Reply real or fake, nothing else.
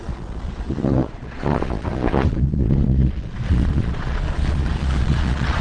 fake